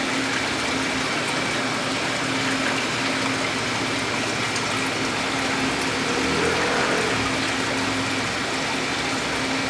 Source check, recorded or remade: recorded